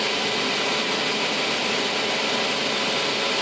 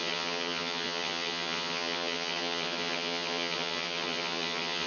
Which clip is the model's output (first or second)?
second